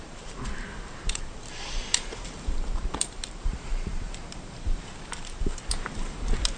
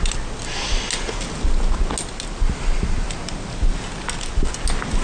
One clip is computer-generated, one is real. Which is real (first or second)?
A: second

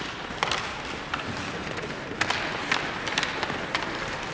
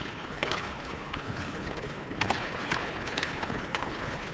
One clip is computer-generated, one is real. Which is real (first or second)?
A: first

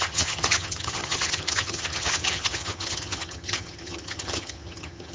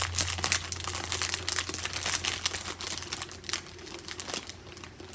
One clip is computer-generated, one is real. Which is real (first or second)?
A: second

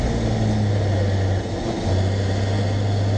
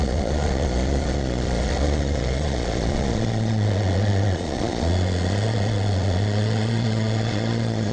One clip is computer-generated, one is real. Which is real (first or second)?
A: first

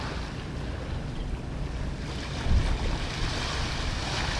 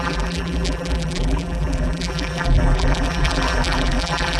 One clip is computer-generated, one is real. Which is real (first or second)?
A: first